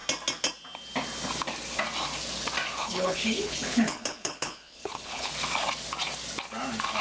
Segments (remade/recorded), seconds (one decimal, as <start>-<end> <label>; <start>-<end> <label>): 0.0-2.8 recorded; 2.8-5.3 remade; 5.3-7.0 recorded